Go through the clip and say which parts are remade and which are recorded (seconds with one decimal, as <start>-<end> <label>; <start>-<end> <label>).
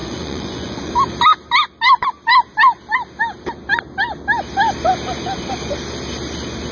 0.0-0.9 remade; 0.9-6.7 recorded